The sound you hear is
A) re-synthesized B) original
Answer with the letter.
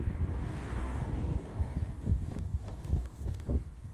A